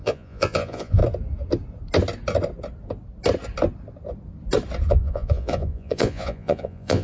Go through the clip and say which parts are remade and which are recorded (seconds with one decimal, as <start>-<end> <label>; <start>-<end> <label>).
0.0-1.0 remade; 1.0-4.9 recorded; 4.9-7.0 remade